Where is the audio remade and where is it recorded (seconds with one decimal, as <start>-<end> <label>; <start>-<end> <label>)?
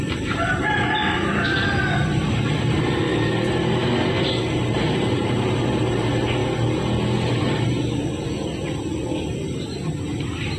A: 0.0-6.4 remade; 6.4-7.3 recorded; 7.3-10.6 remade